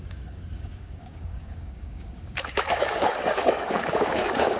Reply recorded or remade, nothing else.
remade